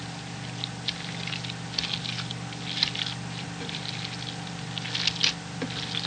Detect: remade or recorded recorded